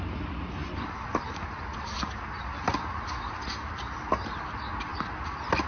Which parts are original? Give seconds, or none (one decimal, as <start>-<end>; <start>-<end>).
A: 0.0-5.7